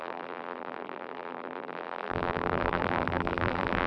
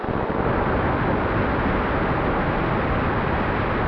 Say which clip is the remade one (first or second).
first